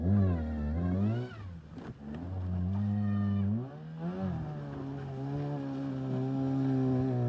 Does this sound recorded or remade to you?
recorded